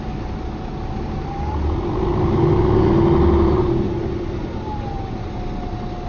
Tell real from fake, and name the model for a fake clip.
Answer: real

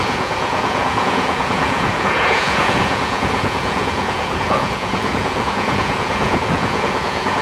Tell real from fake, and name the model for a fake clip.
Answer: fake, vocoder, Vocos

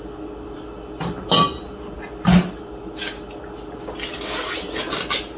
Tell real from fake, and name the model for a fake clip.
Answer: real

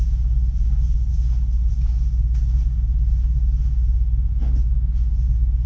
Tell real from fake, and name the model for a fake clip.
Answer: real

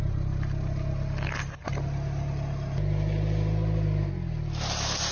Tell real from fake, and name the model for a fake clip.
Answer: real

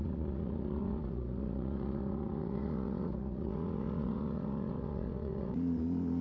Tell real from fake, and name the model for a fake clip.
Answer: fake, vocoder, Vocos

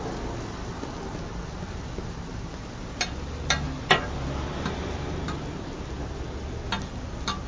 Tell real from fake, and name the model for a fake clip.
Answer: real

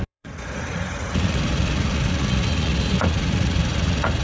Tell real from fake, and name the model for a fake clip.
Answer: fake, vocoder, Vocos